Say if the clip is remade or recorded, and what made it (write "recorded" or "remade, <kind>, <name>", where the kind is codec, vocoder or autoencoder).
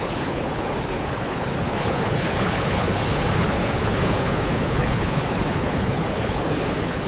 remade, codec, HILCodec